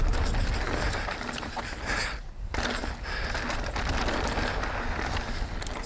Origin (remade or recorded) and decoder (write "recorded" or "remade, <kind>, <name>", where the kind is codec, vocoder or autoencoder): recorded